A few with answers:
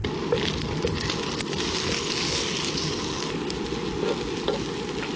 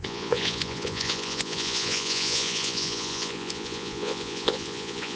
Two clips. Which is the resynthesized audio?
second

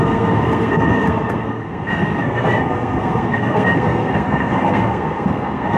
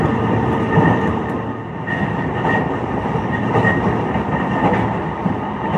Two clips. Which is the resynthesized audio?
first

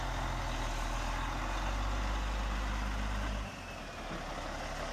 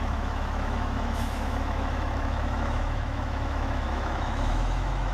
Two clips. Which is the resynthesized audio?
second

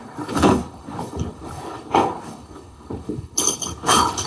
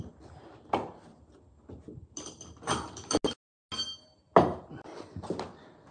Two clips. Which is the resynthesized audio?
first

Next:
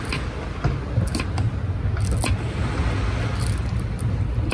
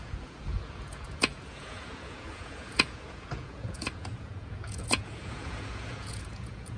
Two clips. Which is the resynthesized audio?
second